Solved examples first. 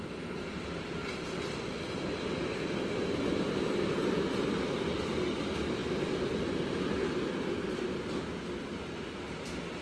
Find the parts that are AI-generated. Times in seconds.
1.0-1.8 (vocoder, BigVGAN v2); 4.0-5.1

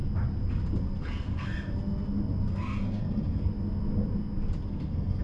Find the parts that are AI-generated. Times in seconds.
1.0-1.7 (codec, SNAC); 2.5-3.5; 4.7-5.2